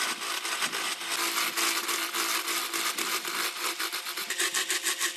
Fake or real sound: real